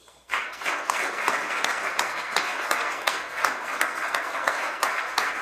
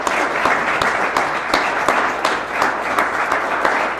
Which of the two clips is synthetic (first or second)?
first